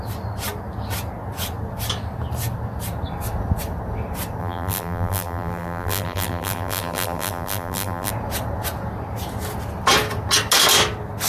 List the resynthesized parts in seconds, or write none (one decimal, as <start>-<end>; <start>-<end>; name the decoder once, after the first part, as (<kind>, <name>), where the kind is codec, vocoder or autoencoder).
4.4-8.1 (vocoder, BigVGAN v2)